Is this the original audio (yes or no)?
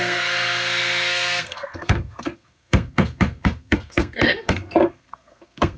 no